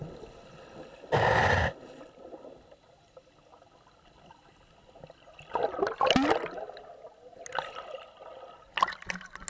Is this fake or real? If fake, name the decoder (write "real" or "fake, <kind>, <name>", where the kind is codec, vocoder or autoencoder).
real